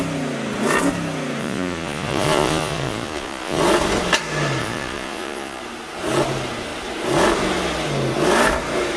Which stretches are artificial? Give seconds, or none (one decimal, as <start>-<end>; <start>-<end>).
1.4-3.6; 4.6-5.6